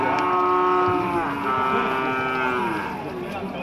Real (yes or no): yes